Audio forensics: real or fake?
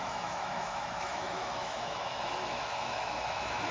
fake